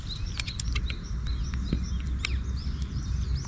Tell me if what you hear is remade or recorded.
recorded